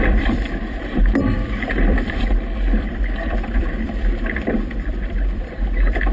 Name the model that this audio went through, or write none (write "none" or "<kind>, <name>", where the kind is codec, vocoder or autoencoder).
vocoder, BigVGAN v2